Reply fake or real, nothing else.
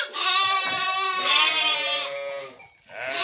real